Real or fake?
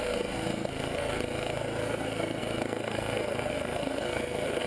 fake